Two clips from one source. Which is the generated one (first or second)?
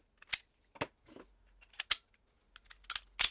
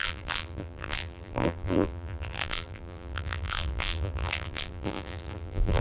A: second